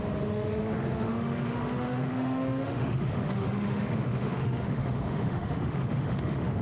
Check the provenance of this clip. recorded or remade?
remade